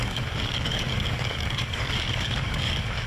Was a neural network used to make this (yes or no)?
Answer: yes